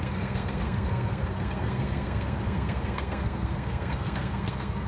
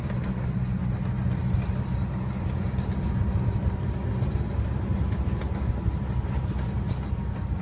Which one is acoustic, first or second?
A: second